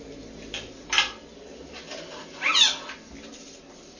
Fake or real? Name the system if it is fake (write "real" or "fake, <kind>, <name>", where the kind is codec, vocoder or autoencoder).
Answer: real